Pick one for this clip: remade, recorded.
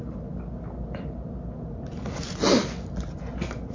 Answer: recorded